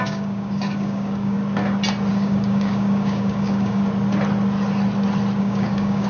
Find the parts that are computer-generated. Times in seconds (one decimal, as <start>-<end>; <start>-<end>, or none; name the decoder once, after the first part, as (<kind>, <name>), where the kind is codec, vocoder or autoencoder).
0.0-1.4 (codec, DAC); 2.1-3.8; 5.4-6.1